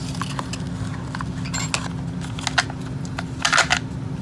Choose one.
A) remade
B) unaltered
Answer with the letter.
B